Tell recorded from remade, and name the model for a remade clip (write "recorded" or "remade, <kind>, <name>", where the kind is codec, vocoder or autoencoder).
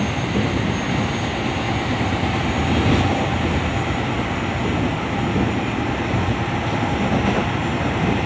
recorded